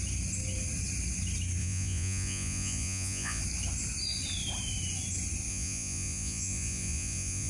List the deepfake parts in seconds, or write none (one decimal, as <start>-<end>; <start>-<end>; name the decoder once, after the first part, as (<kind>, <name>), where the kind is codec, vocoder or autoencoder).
1.6-3.4 (vocoder, Vocos); 5.5-7.5